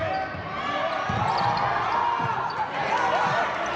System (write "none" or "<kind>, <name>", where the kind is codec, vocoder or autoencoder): none